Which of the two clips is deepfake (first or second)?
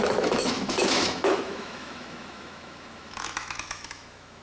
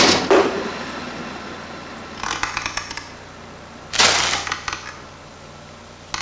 first